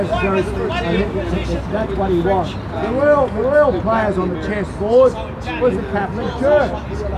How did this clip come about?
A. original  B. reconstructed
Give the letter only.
A